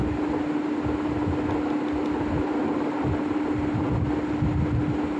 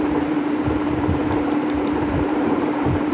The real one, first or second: first